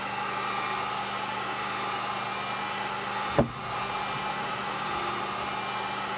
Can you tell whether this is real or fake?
real